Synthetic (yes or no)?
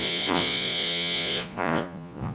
yes